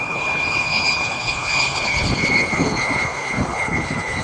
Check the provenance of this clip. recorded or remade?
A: remade